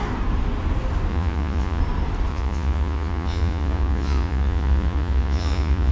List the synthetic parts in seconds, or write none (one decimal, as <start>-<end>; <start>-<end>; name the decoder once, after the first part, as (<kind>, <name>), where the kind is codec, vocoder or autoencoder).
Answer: 1.1-1.8 (vocoder, Vocos); 2.3-5.9